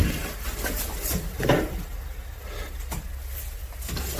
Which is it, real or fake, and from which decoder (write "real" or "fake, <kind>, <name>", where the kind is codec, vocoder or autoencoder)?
real